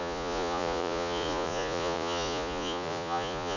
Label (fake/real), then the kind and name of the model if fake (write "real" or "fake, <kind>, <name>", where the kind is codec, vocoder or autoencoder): fake, vocoder, Vocos